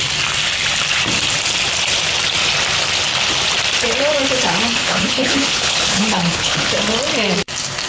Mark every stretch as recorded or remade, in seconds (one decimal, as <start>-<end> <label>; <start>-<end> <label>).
0.0-4.8 recorded; 4.8-6.6 remade; 6.6-7.9 recorded